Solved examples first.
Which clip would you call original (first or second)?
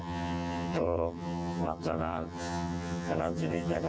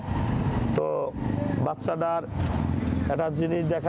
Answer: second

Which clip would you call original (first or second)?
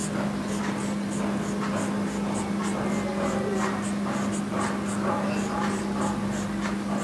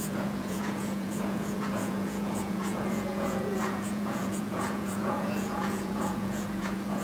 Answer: first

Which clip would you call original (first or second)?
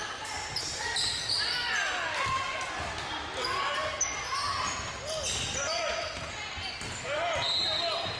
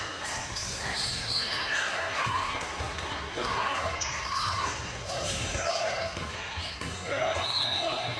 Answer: first